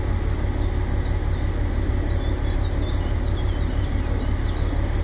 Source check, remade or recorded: recorded